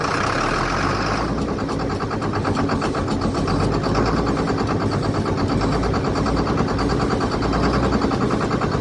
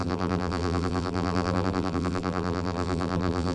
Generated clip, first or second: second